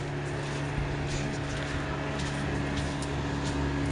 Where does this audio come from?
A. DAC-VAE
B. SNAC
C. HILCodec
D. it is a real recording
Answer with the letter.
D